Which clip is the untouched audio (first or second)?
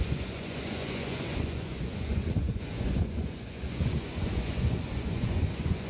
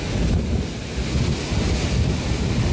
second